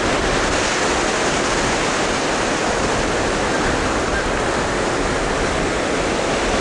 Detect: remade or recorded recorded